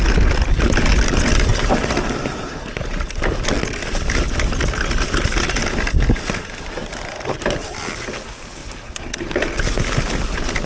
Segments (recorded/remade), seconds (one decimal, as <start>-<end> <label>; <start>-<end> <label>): 0.0-10.7 recorded